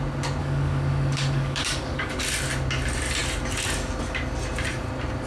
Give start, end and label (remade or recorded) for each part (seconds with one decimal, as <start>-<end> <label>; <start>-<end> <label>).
0.0-0.4 recorded; 0.4-2.2 remade; 2.2-5.3 recorded